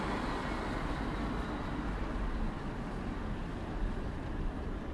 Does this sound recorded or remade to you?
recorded